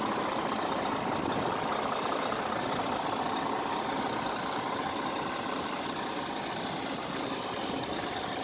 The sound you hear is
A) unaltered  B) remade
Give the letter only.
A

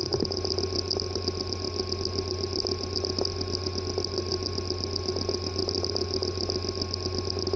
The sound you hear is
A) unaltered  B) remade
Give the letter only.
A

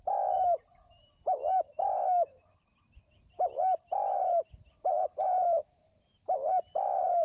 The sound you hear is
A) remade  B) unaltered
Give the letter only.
A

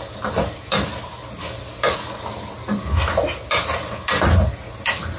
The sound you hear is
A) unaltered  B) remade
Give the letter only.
A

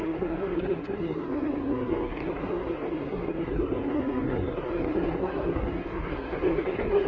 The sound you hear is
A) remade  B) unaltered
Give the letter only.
A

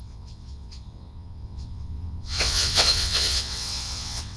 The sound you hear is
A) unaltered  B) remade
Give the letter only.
B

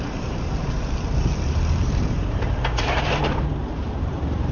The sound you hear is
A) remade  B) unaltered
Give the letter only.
A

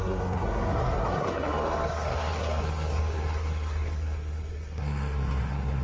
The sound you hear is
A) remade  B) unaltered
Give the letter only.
A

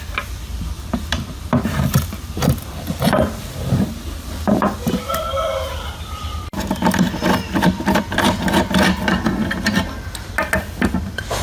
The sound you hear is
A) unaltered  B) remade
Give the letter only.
B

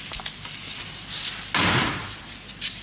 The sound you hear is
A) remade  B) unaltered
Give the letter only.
B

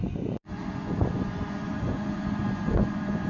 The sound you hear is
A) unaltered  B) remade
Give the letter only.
B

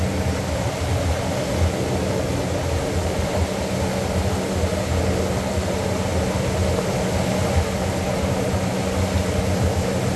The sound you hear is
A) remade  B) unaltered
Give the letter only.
B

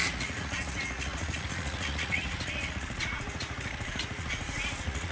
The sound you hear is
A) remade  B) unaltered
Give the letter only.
A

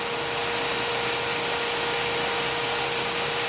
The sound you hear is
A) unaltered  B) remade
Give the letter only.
B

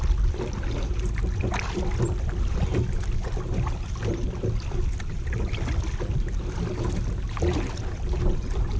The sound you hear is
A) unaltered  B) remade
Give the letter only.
A